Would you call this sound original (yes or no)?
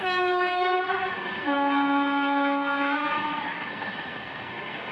no